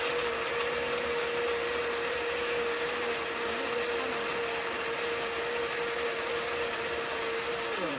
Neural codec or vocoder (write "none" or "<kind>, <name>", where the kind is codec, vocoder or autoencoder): none